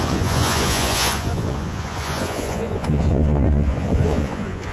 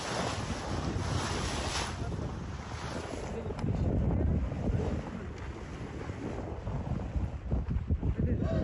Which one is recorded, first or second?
second